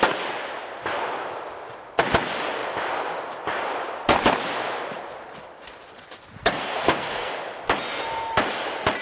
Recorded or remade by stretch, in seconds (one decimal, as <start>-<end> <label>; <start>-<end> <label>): 0.0-6.4 recorded; 6.4-7.3 remade; 7.3-9.0 recorded

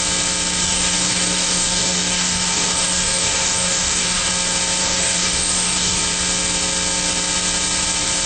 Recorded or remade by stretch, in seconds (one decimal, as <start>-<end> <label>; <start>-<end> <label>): 0.0-0.6 recorded; 0.6-4.3 remade; 4.3-4.8 recorded; 4.8-6.0 remade; 6.0-8.3 recorded

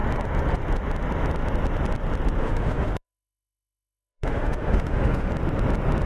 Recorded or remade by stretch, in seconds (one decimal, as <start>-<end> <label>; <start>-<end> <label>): 0.0-2.4 recorded; 2.4-5.3 remade; 5.3-6.1 recorded

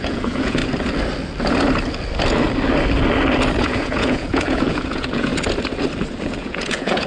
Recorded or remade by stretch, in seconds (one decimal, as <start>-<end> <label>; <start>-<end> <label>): 0.0-0.6 remade; 0.6-3.6 recorded; 3.6-5.3 remade; 5.3-6.2 recorded; 6.2-7.1 remade

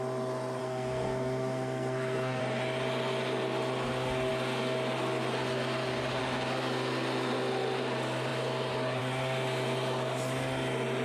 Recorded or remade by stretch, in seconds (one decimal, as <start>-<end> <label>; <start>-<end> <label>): 0.0-0.6 recorded; 0.6-2.4 remade; 2.4-11.0 recorded